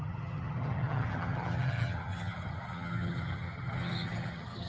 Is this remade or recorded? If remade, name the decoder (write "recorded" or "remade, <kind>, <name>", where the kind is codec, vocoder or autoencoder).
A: remade, vocoder, HiFi-GAN